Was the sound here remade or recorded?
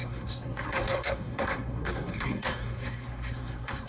remade